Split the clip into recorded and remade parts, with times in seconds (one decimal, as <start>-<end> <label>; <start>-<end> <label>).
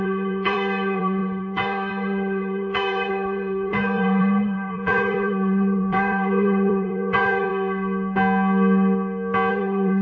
0.0-7.5 remade; 7.5-9.5 recorded; 9.5-10.0 remade